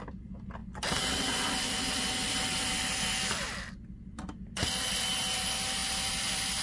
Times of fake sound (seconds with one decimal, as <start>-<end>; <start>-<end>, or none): 0.6-3.7; 5.8-6.6